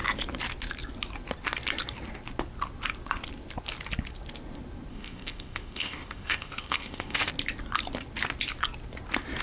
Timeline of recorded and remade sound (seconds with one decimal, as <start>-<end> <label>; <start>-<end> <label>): 0.0-4.9 recorded; 4.9-7.3 remade; 7.3-9.4 recorded